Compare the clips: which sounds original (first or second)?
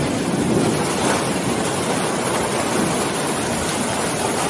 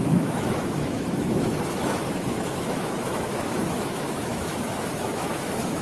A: first